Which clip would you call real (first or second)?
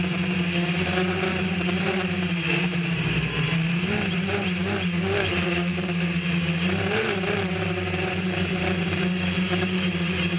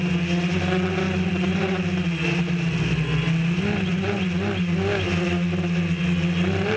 second